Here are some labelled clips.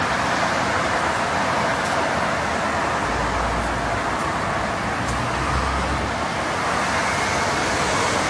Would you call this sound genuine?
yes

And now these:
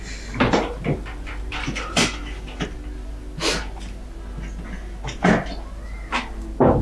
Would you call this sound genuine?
yes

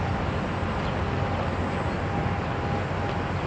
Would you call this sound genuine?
yes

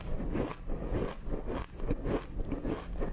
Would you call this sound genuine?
yes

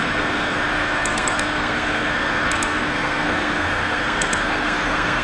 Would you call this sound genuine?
no